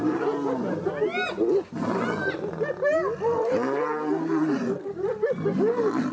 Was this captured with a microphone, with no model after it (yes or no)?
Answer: yes